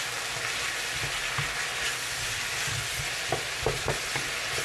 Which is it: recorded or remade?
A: recorded